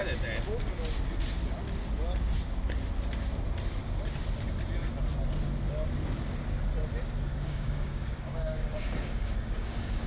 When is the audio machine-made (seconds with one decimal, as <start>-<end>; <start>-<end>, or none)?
7.3-10.1